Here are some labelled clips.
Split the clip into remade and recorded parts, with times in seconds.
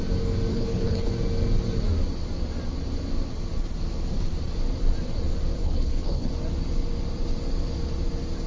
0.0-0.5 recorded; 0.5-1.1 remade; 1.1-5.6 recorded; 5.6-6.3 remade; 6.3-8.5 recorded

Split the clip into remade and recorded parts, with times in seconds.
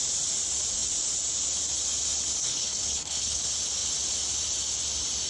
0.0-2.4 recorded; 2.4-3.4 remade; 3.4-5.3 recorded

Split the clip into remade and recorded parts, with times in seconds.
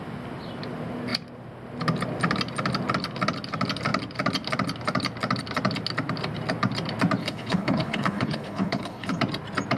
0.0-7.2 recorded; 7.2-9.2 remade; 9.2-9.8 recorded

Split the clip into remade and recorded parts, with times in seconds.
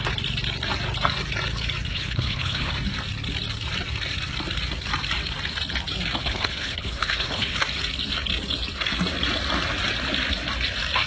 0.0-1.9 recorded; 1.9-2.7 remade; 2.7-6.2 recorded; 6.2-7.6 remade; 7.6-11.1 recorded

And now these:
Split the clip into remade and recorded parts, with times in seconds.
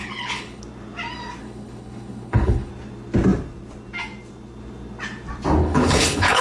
0.0-0.6 remade; 0.6-1.4 recorded; 1.4-2.7 remade; 2.7-5.6 recorded; 5.6-6.4 remade